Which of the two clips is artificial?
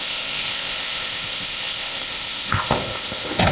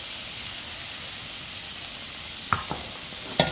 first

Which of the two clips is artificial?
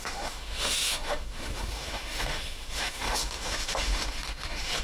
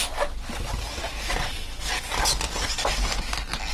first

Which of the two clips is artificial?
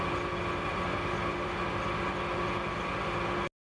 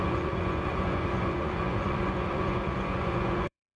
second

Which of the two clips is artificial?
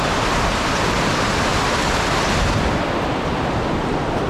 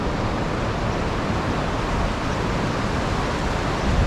first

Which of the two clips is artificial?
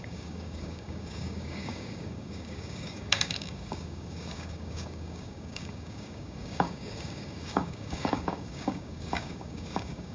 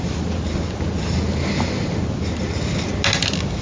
first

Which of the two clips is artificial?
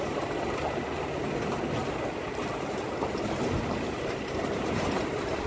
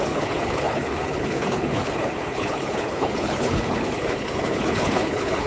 second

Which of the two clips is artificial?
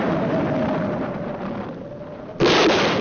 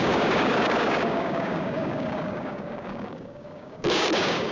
second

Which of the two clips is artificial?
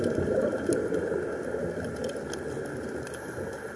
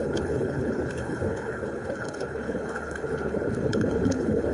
second